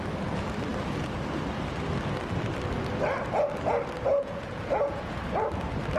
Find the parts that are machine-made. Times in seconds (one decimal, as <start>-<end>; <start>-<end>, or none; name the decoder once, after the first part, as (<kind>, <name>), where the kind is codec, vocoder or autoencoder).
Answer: 4.1-5.2 (vocoder, Vocos)